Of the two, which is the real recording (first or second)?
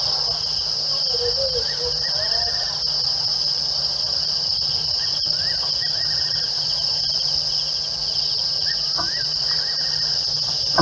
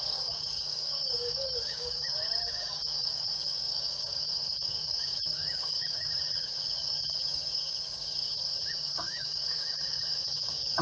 first